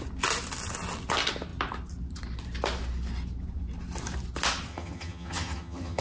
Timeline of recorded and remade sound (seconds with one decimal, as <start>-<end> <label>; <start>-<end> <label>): 0.0-4.7 recorded; 4.7-6.0 remade